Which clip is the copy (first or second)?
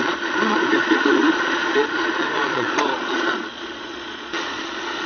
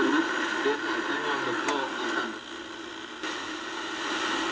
first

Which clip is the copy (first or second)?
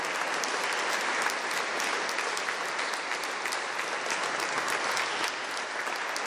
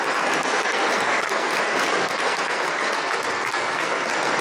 second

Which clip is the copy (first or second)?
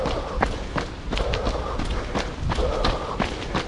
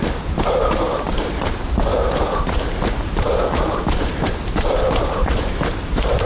second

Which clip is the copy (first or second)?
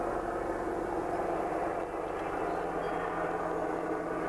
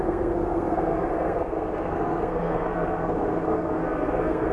second